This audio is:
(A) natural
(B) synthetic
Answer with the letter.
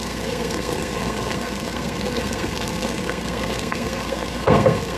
B